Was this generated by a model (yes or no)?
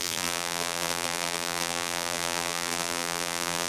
yes